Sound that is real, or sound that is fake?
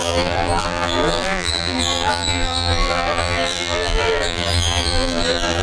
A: fake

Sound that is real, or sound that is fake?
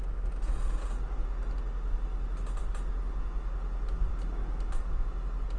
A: real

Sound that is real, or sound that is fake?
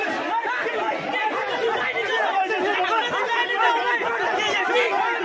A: real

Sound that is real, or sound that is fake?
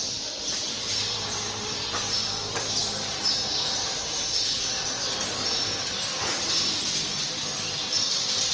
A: fake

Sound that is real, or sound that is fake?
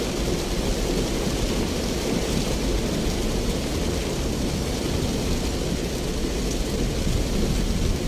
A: real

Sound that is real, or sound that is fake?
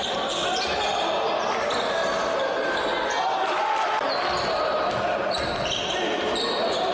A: real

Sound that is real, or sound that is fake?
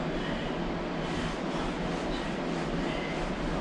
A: real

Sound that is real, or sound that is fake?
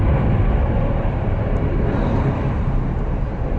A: fake